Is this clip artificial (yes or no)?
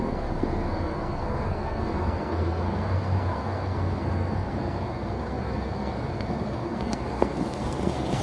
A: yes